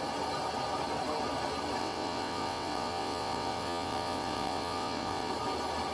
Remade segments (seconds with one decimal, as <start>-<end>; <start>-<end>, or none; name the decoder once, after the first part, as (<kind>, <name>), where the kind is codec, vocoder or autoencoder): 1.8-5.3 (vocoder, WaveNeXt)